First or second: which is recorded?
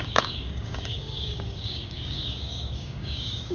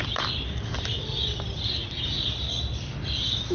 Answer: second